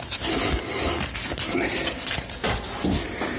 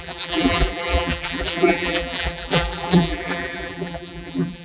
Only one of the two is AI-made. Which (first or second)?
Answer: second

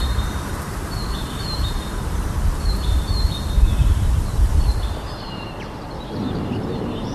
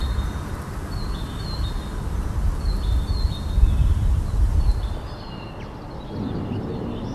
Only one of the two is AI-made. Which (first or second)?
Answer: first